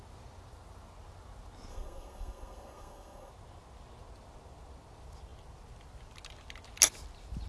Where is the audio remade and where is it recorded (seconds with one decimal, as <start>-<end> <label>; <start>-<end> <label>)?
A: 0.0-1.7 recorded; 1.7-3.3 remade; 3.3-7.5 recorded